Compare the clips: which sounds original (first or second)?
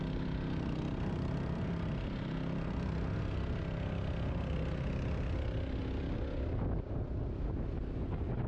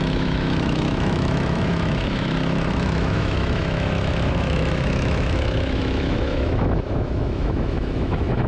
first